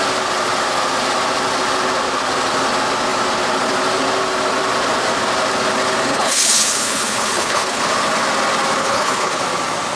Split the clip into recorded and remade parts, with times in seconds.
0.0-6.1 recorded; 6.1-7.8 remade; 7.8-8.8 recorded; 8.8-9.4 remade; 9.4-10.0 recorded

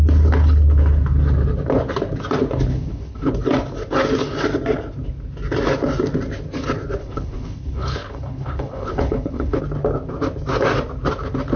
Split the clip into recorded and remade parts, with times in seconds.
0.0-2.7 recorded; 2.7-3.3 remade; 3.3-7.0 recorded; 7.0-9.6 remade; 9.6-11.6 recorded

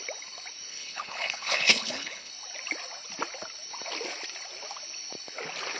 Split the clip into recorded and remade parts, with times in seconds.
0.0-0.7 recorded; 0.7-2.3 remade; 2.3-5.8 recorded

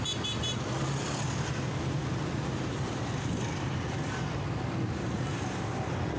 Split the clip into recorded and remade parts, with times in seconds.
0.0-6.2 recorded